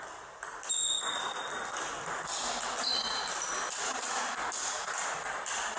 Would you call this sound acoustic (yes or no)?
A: yes